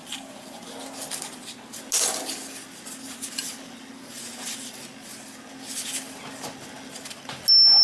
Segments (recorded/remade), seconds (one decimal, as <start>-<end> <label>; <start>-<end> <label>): 0.0-7.8 recorded